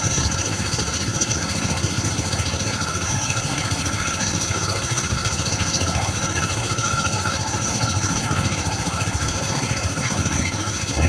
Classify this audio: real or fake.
fake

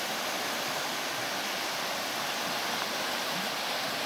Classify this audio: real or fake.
real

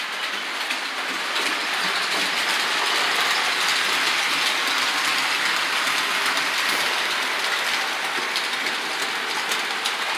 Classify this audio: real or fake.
real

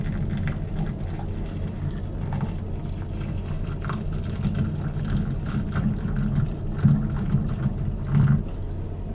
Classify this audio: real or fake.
real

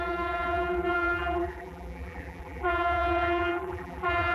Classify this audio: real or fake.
fake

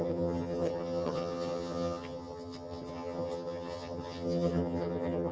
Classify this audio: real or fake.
fake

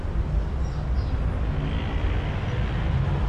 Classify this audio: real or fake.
real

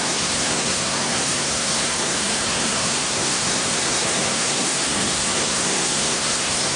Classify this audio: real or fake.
fake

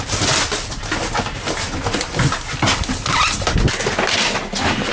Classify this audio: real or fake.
real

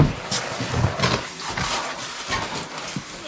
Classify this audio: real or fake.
real